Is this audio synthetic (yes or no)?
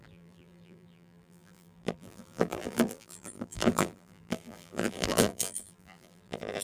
yes